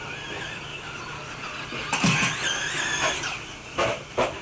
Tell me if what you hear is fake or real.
real